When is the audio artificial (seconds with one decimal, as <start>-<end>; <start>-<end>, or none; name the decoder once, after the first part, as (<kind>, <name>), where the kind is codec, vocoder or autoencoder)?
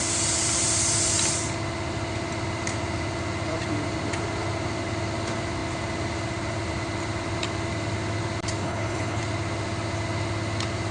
8.6-9.2 (codec, HILCodec)